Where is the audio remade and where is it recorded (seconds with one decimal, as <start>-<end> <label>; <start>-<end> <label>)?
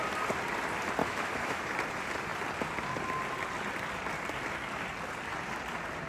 0.0-1.0 recorded; 1.0-1.6 remade; 1.6-6.1 recorded